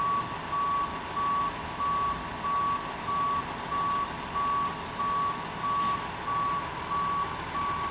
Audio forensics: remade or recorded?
recorded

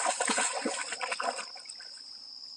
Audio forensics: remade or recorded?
recorded